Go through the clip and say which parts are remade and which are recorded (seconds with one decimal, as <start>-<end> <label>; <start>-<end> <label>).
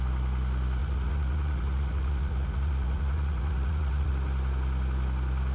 0.0-0.8 recorded; 0.8-4.1 remade; 4.1-5.5 recorded